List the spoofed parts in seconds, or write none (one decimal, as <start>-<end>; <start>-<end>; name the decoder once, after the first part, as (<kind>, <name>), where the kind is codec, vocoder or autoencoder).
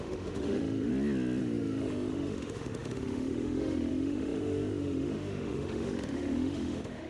0.0-0.9 (autoencoder, DAC-VAE); 1.4-7.1